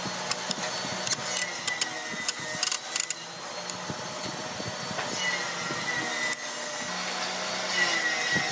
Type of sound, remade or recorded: recorded